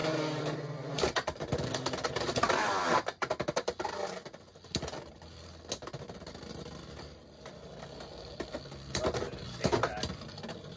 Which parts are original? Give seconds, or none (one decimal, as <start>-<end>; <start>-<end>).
3.3-10.8